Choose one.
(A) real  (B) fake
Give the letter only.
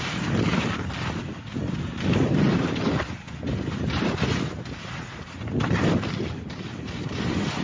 A